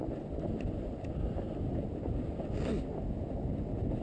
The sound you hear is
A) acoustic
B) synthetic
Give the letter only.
A